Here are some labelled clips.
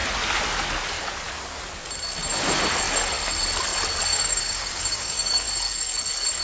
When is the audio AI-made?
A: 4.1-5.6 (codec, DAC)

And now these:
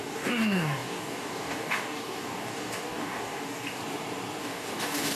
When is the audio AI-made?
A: 0.0-3.8 (codec, DAC); 4.4-5.2

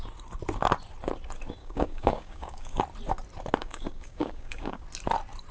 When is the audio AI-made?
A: 1.6-2.8 (codec, DAC); 3.6-4.8

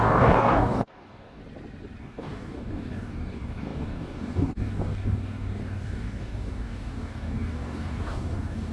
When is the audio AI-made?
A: 0.0-1.4 (codec, DAC); 2.0-8.7

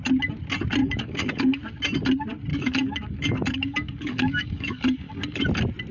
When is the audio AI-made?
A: 0.8-1.6 (codec, DAC); 2.5-5.4

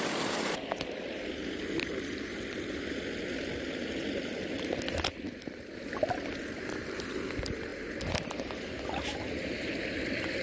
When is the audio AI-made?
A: none

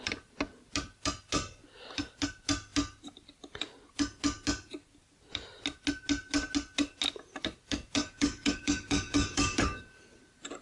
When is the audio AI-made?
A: 8.0-9.8 (codec, DAC)

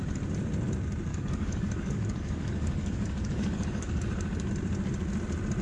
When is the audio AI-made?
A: 1.1-4.5 (codec, DAC)